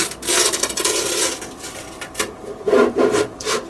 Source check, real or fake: fake